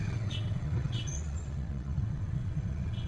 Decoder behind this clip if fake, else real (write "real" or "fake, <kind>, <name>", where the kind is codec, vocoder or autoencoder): fake, vocoder, WaveNeXt